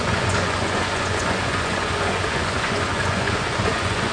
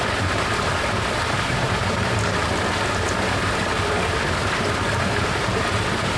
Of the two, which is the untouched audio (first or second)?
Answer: second